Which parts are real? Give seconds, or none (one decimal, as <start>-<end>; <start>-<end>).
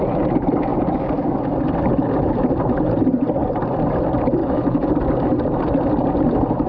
0.0-0.7; 1.4-4.4; 4.9-6.7